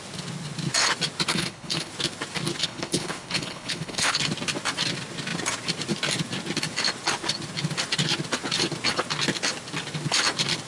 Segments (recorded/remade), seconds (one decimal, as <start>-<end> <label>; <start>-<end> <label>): 0.0-1.3 recorded; 1.3-1.9 remade; 1.9-2.6 recorded; 2.6-4.2 remade; 4.2-10.7 recorded